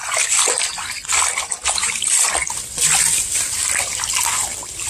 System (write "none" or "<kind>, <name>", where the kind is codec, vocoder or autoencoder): none